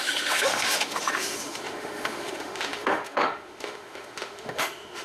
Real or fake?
fake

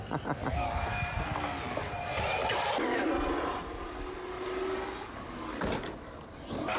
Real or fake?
real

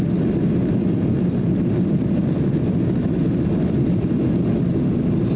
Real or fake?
real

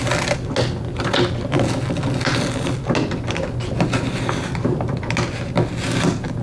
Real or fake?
real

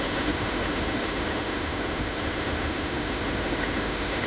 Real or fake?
fake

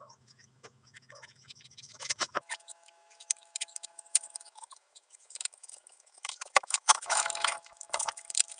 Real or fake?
fake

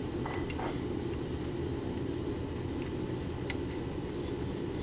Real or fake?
real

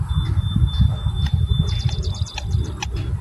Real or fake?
real